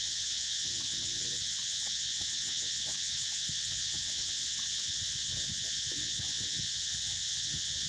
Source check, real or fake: fake